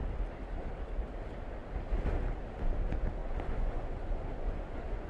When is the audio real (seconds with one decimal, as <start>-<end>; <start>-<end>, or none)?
0.0-3.2